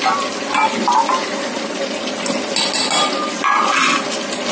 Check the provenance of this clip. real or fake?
real